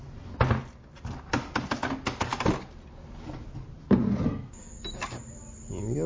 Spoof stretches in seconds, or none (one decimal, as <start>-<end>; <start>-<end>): none